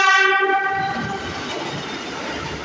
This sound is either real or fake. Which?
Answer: real